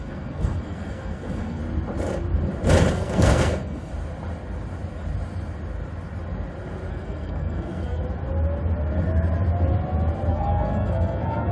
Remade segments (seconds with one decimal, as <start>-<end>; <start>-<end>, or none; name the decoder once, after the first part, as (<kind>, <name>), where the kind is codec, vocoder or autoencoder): 0.0-1.6 (codec, SNAC); 2.9-3.9; 6.9-8.0; 10.3-11.5